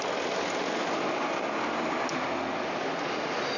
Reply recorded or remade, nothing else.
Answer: recorded